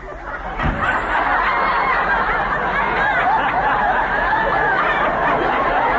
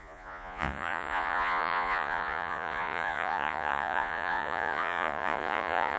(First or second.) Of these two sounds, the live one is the first